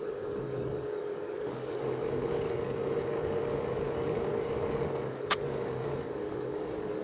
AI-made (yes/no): yes